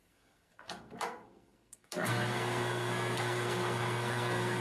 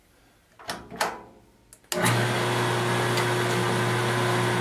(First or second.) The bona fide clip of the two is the second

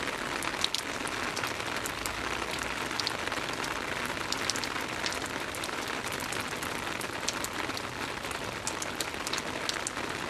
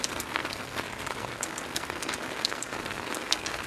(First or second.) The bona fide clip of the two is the first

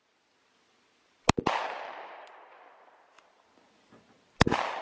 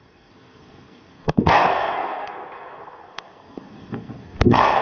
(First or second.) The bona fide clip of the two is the first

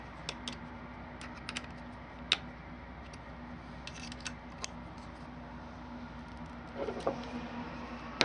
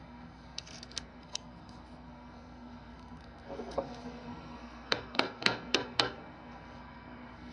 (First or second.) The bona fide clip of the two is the first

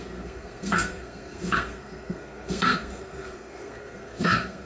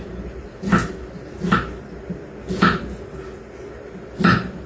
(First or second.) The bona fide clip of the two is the second